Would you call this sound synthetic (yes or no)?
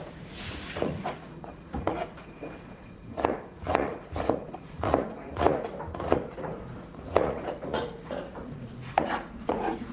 yes